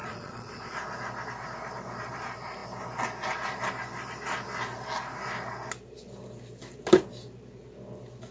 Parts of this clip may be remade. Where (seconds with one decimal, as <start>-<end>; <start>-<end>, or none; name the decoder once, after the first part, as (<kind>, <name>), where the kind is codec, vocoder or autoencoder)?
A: 0.0-0.7 (vocoder, Vocos)